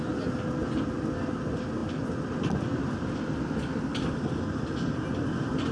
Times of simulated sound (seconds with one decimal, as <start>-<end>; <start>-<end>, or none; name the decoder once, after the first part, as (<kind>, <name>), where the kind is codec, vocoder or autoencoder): none